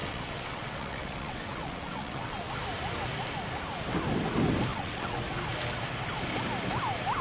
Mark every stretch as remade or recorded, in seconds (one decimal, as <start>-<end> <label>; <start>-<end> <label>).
0.0-2.5 remade; 2.5-4.7 recorded; 4.7-5.2 remade; 5.2-7.2 recorded